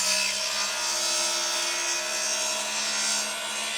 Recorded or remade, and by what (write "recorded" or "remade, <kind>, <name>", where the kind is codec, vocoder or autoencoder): recorded